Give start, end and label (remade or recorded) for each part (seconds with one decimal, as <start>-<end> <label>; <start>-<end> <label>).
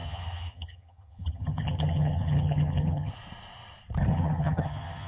0.0-3.1 remade; 3.1-4.1 recorded; 4.1-5.1 remade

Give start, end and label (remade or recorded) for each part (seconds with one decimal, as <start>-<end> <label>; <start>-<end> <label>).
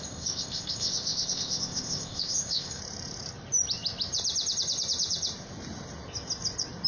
0.0-2.8 remade; 2.8-6.9 recorded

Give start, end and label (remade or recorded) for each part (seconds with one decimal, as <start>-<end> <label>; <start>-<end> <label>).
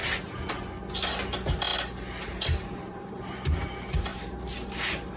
0.0-1.1 recorded; 1.1-1.7 remade; 1.7-2.2 recorded; 2.2-5.2 remade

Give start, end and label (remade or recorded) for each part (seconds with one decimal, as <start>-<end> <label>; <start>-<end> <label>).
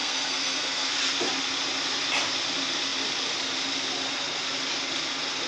0.0-0.9 remade; 0.9-5.5 recorded